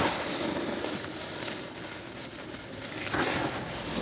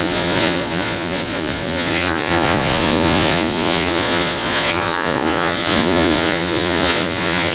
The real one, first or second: first